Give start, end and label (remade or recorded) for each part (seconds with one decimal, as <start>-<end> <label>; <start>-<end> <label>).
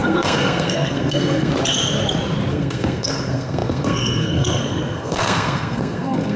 0.0-1.5 remade; 1.5-2.5 recorded; 2.5-6.4 remade